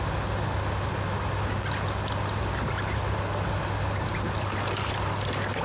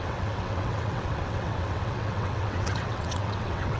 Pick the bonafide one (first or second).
first